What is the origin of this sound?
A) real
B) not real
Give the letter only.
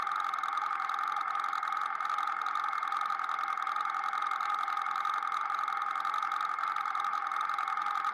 A